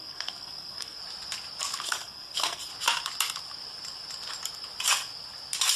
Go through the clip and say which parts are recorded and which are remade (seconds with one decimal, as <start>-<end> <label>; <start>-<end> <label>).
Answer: 0.0-1.0 remade; 1.0-1.8 recorded; 1.8-2.7 remade; 2.7-5.8 recorded